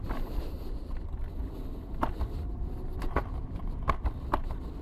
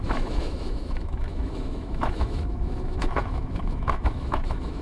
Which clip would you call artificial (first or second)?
second